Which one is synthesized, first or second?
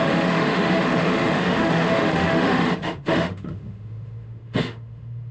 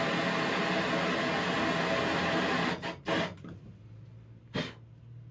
first